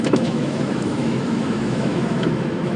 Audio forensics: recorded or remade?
remade